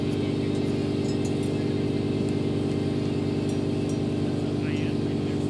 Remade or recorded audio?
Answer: recorded